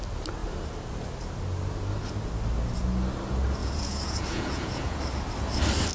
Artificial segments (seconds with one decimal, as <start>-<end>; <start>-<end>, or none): 3.6-5.0